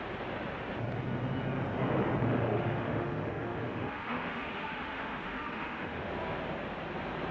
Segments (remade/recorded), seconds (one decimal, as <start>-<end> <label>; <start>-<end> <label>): 0.0-2.2 recorded; 2.2-6.1 remade; 6.1-7.3 recorded